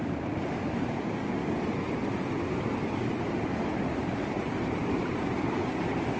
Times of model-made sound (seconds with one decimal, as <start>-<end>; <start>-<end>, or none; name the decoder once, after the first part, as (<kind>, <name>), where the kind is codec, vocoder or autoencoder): 0.0-1.4 (vocoder, BigVGAN v2); 3.2-4.8; 5.3-6.2